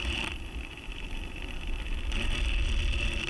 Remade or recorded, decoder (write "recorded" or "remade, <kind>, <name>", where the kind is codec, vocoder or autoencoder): remade, vocoder, BigVGAN v2